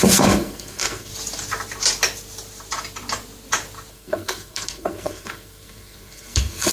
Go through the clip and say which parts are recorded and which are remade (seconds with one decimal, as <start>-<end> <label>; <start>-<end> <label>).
0.0-1.1 remade; 1.1-3.9 recorded; 3.9-6.7 remade